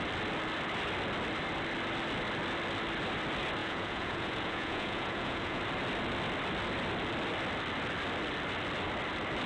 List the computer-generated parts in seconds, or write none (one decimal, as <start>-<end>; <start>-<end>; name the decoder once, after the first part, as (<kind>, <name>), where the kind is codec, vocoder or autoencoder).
3.6-5.6 (vocoder, Vocos)